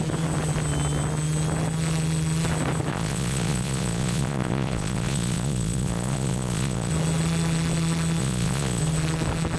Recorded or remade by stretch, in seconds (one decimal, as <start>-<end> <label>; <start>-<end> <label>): 0.0-2.9 recorded; 2.9-6.9 remade; 6.9-8.2 recorded; 8.2-8.8 remade; 8.8-9.6 recorded

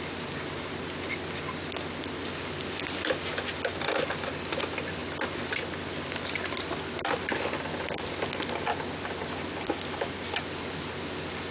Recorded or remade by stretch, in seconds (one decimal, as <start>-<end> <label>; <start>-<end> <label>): 0.0-11.5 recorded

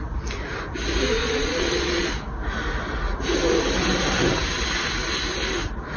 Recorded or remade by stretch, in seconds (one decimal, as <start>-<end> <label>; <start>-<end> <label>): 0.0-1.2 recorded; 1.2-2.1 remade; 2.1-6.0 recorded

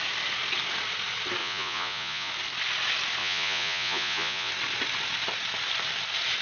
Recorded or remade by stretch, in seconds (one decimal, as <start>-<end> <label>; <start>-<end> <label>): 0.0-1.4 recorded; 1.4-2.3 remade; 2.3-3.2 recorded; 3.2-4.5 remade; 4.5-6.4 recorded

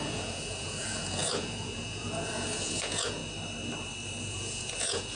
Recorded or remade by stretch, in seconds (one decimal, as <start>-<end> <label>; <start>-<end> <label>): 0.0-3.2 remade; 3.2-4.2 recorded; 4.2-5.2 remade

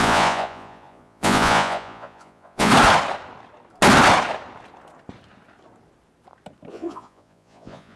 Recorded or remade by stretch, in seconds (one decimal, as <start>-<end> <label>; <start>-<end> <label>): 0.0-2.7 remade; 2.7-6.7 recorded; 6.7-8.0 remade

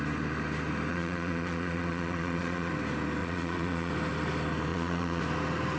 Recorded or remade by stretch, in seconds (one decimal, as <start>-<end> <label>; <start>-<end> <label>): 0.0-0.9 recorded; 0.9-2.7 remade; 2.7-3.2 recorded; 3.2-3.9 remade; 3.9-4.7 recorded; 4.7-5.2 remade; 5.2-5.8 recorded